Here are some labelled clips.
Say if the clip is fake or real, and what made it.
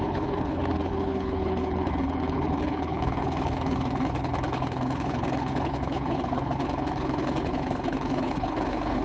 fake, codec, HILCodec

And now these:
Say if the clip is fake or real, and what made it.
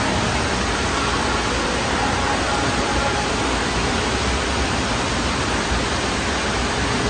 real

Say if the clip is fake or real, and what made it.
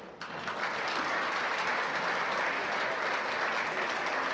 real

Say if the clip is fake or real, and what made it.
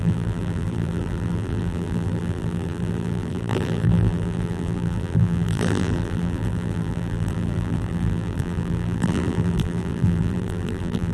fake, vocoder, BigVGAN v2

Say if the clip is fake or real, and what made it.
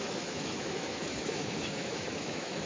fake, autoencoder, DAC-VAE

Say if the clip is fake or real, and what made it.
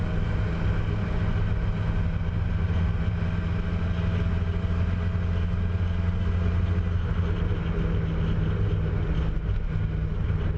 real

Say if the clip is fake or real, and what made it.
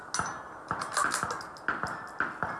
real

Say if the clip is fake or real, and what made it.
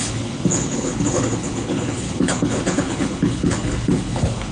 fake, codec, HILCodec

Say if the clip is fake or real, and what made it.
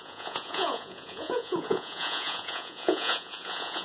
fake, vocoder, Vocos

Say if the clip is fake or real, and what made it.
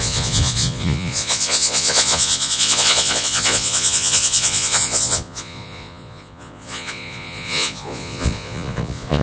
fake, vocoder, Vocos